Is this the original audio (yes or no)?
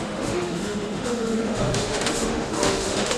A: no